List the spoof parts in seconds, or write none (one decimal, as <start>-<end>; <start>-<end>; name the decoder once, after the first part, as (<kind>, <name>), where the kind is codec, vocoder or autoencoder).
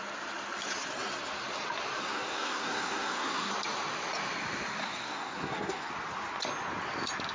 2.0-3.5 (codec, SNAC); 4.8-5.9